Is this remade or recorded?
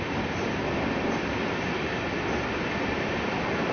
recorded